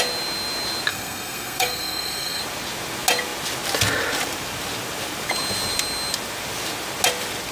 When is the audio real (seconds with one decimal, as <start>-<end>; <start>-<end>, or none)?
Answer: 0.0-0.9; 2.4-7.5